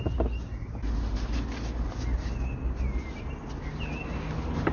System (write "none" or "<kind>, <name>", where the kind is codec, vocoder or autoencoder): none